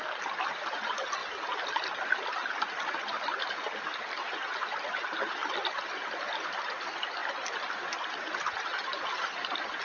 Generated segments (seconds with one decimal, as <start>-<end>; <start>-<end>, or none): none